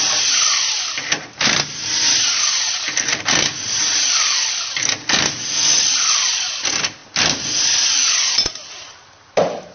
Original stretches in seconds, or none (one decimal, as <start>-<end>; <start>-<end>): 0.0-9.7